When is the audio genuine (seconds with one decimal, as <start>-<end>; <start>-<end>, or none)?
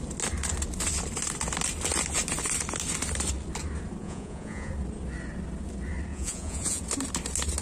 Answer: 0.0-4.0; 4.7-6.1; 6.8-7.6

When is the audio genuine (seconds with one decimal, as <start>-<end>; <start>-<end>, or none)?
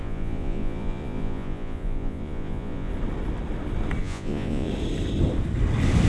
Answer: 2.9-4.0; 4.7-6.1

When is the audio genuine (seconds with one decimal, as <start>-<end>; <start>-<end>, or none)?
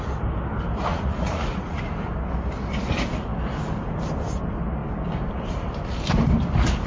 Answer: 0.0-0.9; 1.8-6.9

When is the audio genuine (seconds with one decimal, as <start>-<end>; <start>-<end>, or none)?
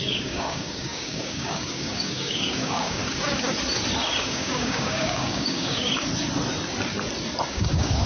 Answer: 3.0-4.2; 5.9-7.5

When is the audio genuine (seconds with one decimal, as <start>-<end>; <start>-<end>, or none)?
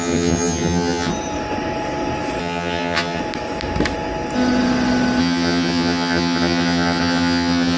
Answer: 1.1-2.4; 3.2-5.2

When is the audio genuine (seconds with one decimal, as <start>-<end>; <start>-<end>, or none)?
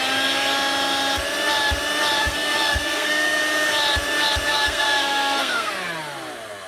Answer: 0.0-2.2; 3.4-4.5; 5.7-6.7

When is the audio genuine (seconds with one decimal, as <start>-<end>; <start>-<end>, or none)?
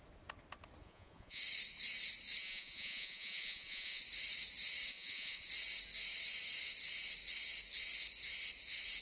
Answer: 0.0-0.8; 1.4-2.4; 4.0-4.9; 5.5-9.0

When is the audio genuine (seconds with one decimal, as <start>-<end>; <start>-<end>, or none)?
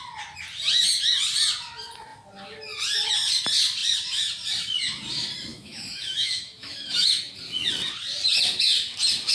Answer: 0.0-5.5; 7.3-9.3